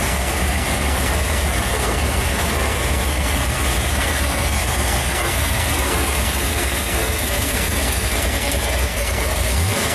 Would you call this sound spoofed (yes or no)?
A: yes